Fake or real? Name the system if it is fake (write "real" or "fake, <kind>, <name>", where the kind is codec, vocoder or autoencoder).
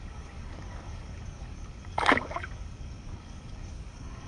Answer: fake, codec, DAC